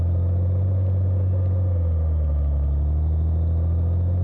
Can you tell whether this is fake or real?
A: real